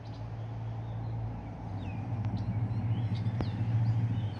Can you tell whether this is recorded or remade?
recorded